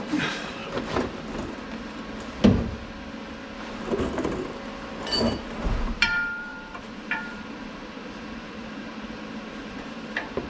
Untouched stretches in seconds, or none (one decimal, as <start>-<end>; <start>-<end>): 0.6-5.2